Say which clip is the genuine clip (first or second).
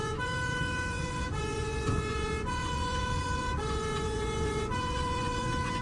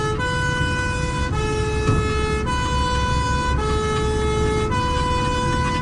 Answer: second